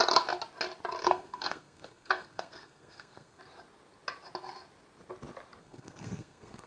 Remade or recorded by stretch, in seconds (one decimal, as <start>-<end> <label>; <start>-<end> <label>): 0.0-1.0 recorded; 1.0-3.4 remade; 3.4-5.6 recorded; 5.6-6.7 remade